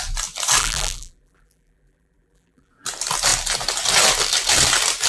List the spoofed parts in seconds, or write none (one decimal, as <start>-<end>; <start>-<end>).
0.6-2.7